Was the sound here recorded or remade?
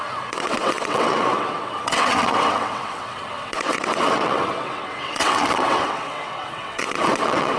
remade